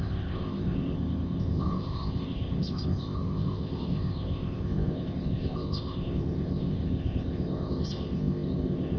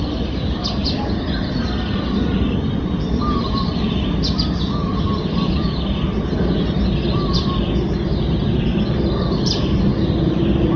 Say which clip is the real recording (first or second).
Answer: second